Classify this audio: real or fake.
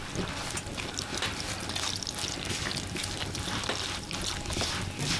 real